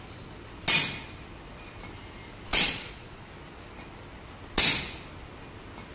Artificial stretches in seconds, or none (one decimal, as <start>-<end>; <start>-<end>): 2.5-3.3